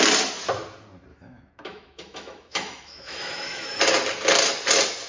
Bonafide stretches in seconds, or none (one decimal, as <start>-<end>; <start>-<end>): 0.0-1.1; 3.8-5.1